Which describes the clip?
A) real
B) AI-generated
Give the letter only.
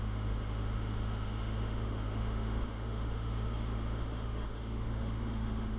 B